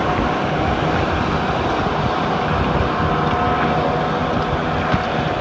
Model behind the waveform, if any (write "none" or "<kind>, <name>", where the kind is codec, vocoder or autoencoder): none